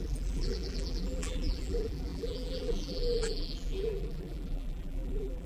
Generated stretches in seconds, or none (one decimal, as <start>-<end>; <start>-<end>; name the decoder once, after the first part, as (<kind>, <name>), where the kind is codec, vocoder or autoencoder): 0.0-5.5 (vocoder, BigVGAN v2)